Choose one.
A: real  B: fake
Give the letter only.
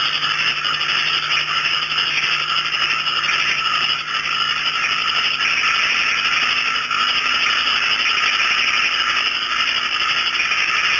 A